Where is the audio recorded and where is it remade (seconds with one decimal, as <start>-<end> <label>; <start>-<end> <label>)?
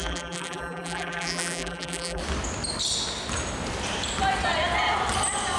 0.0-2.2 remade; 2.2-5.6 recorded